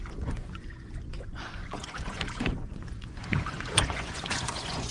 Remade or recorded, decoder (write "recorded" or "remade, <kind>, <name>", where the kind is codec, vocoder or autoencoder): remade, vocoder, Vocos